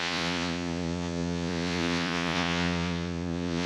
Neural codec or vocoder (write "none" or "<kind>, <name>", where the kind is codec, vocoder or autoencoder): vocoder, Vocos